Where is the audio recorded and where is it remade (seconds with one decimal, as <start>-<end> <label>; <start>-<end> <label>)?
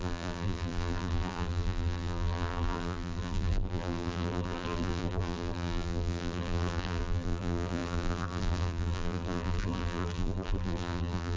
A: 0.0-11.4 remade